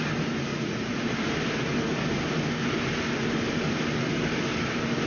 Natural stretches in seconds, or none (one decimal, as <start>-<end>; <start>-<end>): 0.0-0.5; 1.3-5.1